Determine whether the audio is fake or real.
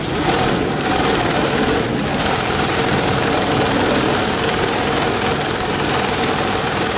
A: fake